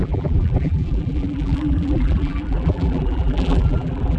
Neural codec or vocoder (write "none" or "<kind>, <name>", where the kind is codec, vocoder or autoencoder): vocoder, BigVGAN v2